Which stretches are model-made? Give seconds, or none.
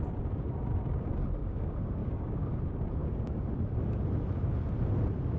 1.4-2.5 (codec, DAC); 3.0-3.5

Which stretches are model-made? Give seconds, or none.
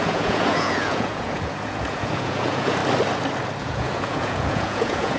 0.0-2.8 (vocoder, Vocos); 3.6-5.2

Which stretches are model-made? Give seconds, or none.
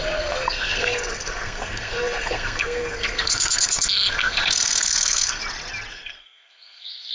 0.0-5.4 (codec, SNAC); 5.9-7.1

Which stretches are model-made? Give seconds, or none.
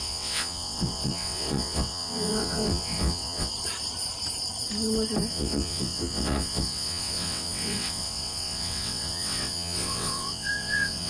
0.0-3.5 (vocoder, WaveNeXt); 5.3-11.1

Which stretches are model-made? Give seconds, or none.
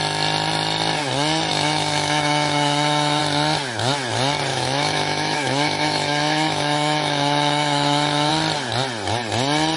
1.5-3.2 (autoencoder, DAC-VAE); 4.5-8.3